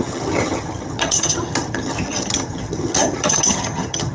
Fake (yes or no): yes